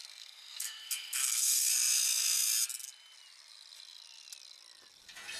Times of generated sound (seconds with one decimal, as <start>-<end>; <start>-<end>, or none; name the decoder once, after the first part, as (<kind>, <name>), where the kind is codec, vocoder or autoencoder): 0.0-1.7 (codec, SNAC)